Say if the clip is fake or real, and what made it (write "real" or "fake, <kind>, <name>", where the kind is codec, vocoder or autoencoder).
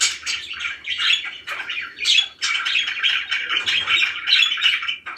real